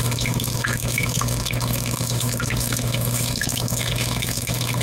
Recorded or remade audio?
remade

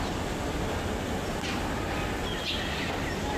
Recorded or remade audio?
recorded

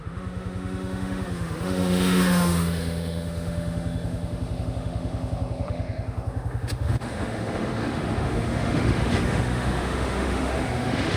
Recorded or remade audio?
remade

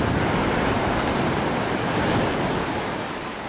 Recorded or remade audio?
recorded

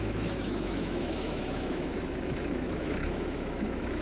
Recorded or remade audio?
remade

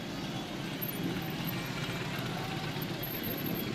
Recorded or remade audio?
recorded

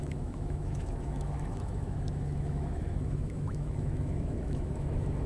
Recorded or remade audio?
remade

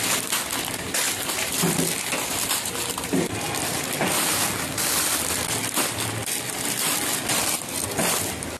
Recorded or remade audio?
recorded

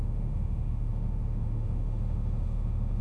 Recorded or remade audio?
remade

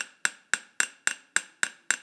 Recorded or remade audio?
recorded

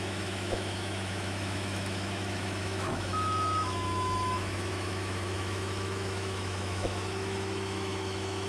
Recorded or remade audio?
remade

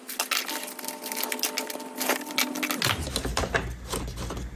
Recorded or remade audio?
recorded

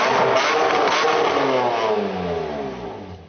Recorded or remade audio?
recorded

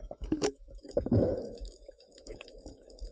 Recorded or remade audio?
remade